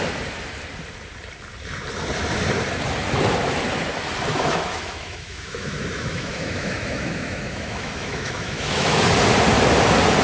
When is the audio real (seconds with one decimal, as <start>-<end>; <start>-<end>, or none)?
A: 0.0-4.3; 9.1-10.2